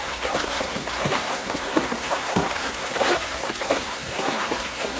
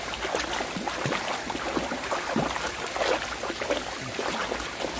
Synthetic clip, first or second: first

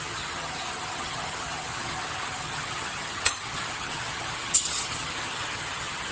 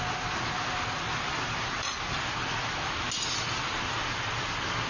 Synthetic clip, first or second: first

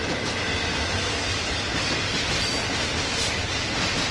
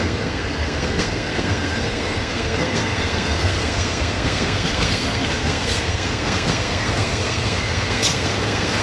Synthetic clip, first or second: second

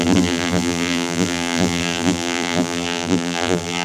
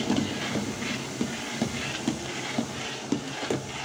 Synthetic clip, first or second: first